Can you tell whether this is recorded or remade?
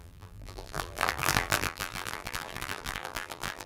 remade